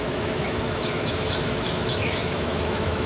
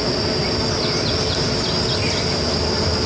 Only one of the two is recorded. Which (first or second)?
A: second